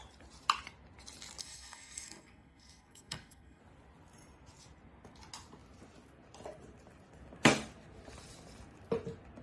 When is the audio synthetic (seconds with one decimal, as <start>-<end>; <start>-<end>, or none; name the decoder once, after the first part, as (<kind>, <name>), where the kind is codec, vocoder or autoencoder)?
1.4-3.6 (codec, SNAC)